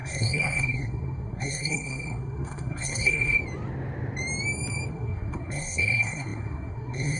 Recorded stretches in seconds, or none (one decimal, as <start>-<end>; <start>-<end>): 3.4-4.9